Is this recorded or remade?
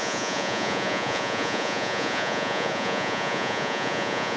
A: remade